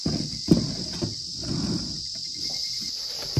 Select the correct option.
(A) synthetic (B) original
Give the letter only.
B